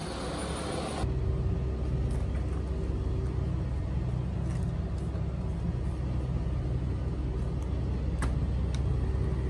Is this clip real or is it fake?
real